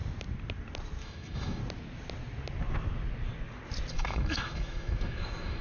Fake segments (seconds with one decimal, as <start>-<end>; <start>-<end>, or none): 1.0-1.6; 3.9-5.6